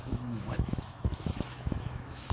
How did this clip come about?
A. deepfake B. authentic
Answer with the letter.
A